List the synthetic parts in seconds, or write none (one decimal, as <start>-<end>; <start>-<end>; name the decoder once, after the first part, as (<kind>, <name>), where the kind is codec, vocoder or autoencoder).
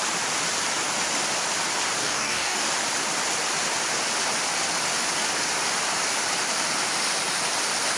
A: 2.0-2.6 (codec, DAC)